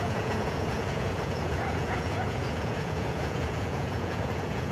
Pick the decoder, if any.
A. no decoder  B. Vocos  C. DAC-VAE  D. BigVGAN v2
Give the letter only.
B